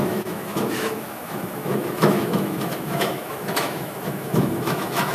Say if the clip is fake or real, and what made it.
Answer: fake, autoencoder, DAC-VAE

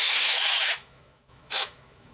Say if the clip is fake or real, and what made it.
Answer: fake, autoencoder, DAC-VAE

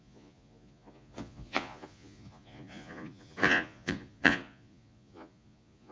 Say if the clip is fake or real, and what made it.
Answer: fake, vocoder, Vocos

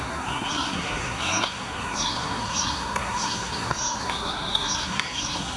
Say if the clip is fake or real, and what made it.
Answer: fake, codec, SNAC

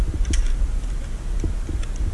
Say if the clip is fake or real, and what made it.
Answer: real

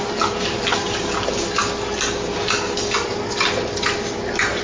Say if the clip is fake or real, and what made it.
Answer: real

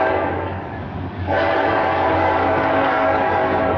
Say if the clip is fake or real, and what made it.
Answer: fake, codec, DAC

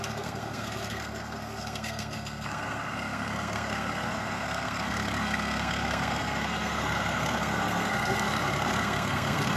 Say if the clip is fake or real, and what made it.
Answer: fake, codec, SNAC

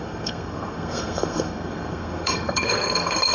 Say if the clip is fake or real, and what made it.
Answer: fake, codec, SNAC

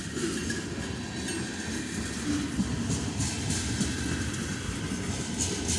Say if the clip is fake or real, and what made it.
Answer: real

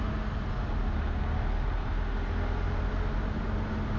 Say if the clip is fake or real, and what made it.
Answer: real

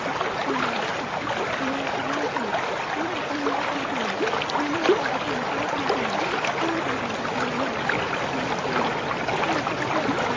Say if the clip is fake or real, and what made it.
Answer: real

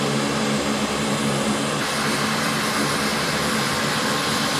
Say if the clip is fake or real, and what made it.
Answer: real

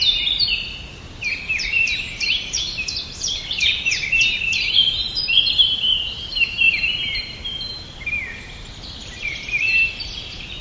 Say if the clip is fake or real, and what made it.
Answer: fake, vocoder, BigVGAN v2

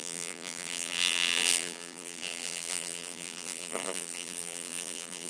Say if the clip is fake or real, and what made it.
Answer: fake, vocoder, BigVGAN v2